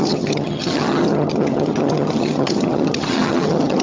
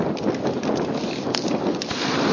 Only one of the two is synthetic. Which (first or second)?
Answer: first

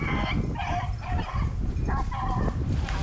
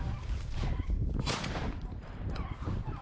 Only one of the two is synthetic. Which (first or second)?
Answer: second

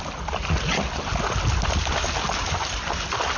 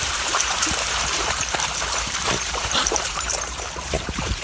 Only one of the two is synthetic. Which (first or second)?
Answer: second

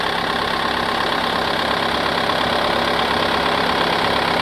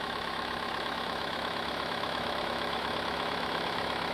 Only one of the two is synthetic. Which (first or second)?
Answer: second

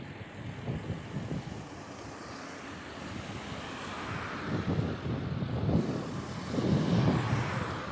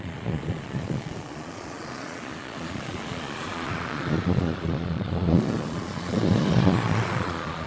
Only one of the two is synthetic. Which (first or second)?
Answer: second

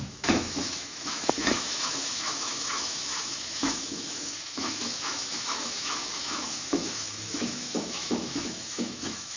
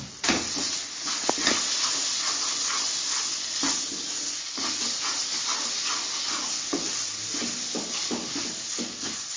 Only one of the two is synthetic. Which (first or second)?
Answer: first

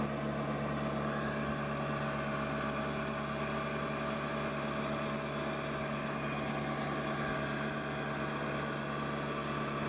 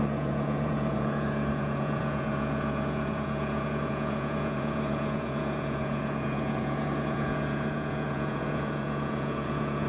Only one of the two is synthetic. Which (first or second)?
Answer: second